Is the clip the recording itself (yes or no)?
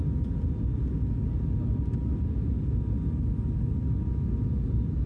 yes